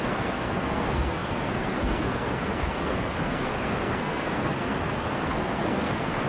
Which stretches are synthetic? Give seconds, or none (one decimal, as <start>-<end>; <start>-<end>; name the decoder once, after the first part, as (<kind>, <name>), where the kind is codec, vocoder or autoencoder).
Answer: 0.0-6.3 (codec, SNAC)